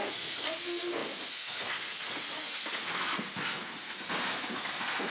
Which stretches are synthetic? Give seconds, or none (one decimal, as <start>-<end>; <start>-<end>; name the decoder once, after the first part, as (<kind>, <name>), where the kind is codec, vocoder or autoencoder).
0.0-5.1 (codec, SNAC)